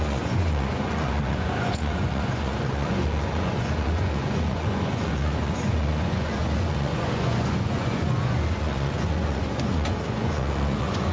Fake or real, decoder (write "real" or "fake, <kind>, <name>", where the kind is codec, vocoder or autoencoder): fake, vocoder, Vocos